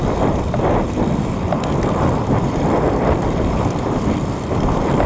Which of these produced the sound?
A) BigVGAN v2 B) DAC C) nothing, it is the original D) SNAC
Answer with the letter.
A